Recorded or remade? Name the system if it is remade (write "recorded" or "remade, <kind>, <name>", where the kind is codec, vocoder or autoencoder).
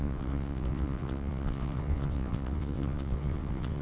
remade, vocoder, WaveNeXt